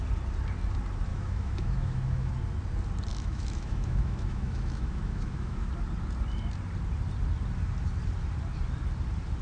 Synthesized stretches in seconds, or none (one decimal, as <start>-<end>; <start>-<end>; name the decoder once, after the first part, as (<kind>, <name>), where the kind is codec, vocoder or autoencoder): 1.1-2.3 (autoencoder, DAC-VAE); 3.1-5.7